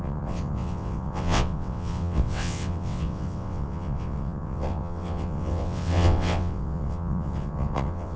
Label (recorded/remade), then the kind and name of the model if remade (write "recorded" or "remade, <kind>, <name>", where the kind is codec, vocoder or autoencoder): remade, vocoder, WaveNeXt